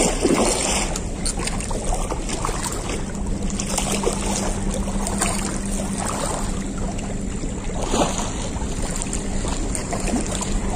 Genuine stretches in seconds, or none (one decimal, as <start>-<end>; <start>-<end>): 0.0-9.8